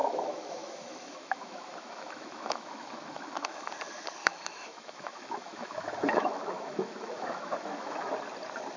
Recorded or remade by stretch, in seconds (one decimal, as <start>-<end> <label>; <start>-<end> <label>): 0.0-3.7 remade; 3.7-4.2 recorded; 4.2-8.1 remade; 8.1-8.8 recorded